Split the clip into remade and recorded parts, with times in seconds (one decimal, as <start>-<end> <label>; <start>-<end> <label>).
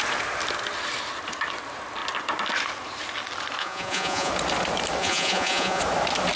0.0-3.6 recorded; 3.6-4.3 remade; 4.3-5.0 recorded; 5.0-5.8 remade; 5.8-6.4 recorded